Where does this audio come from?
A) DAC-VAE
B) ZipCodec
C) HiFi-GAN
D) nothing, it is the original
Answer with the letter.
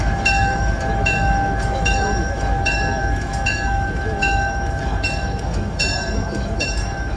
A